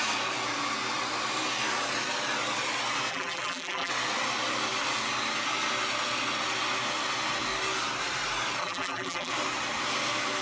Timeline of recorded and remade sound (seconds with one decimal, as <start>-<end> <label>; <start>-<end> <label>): 0.0-3.1 recorded; 3.1-3.9 remade; 3.9-8.6 recorded; 8.6-9.3 remade; 9.3-10.4 recorded